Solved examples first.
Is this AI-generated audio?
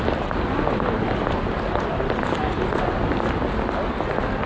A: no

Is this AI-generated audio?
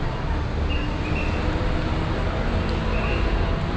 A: no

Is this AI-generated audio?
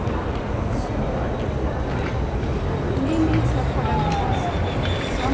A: no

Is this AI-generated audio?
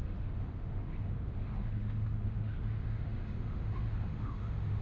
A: yes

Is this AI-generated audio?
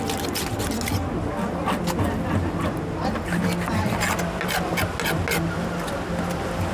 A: no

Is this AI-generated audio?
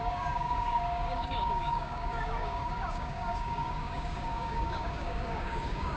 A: yes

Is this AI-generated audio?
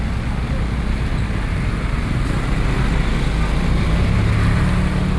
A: no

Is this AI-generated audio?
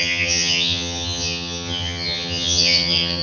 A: yes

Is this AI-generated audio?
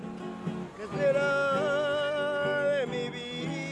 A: no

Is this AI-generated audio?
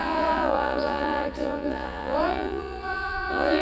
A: yes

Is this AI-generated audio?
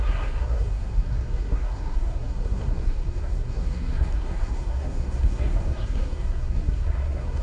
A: yes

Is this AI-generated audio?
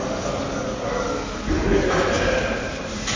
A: no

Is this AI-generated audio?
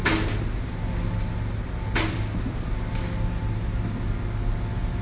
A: no